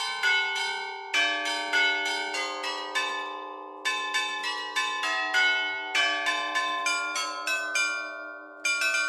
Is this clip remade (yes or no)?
no